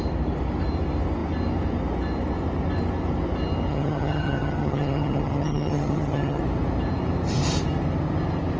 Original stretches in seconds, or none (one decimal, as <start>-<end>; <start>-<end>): 0.0-3.7; 6.4-8.6